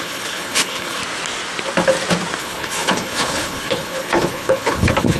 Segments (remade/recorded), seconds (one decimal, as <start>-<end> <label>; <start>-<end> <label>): 0.0-1.0 remade; 1.0-2.4 recorded; 2.4-5.2 remade